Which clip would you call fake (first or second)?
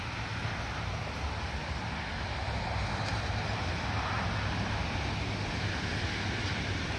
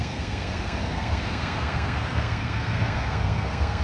second